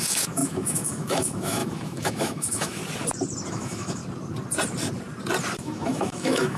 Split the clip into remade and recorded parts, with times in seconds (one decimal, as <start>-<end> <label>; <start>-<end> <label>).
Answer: 0.0-2.8 remade; 2.8-3.5 recorded; 3.5-4.0 remade; 4.0-5.6 recorded; 5.6-6.6 remade